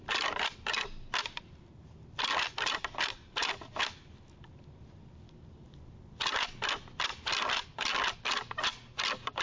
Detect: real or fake real